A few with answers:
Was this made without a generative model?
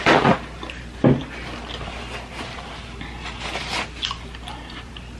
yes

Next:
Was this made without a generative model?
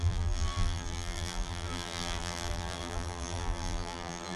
no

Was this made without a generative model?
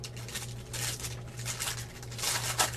yes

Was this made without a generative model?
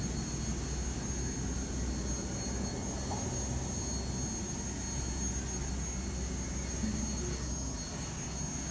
yes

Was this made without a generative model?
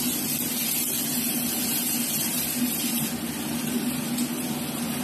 yes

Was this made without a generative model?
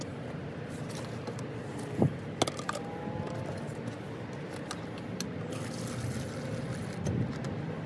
yes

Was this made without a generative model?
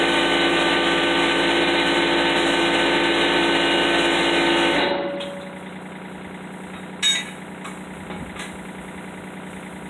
yes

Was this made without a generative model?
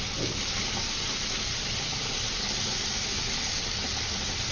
no